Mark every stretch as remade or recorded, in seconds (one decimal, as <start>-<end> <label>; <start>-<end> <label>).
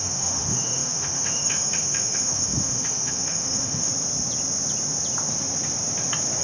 0.0-3.9 remade; 3.9-6.4 recorded